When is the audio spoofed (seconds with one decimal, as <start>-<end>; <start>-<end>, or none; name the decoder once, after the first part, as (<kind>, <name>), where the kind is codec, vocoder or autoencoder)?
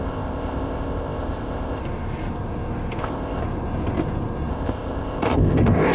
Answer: 0.0-1.8 (codec, ZipCodec); 3.0-3.4; 4.5-5.9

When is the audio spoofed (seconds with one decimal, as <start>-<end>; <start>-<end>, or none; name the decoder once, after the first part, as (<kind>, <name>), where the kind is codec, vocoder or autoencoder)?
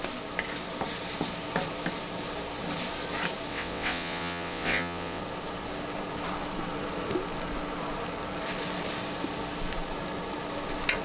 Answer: 3.5-5.2 (vocoder, WaveNeXt)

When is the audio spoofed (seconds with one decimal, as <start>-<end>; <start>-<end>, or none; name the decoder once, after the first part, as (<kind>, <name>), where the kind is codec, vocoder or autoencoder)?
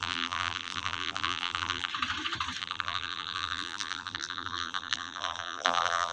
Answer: 0.0-1.9 (vocoder, BigVGAN v2); 2.6-6.1